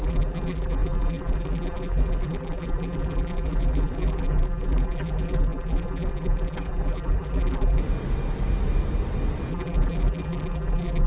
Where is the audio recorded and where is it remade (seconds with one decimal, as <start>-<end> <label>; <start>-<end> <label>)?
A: 0.0-7.8 remade; 7.8-9.5 recorded; 9.5-11.1 remade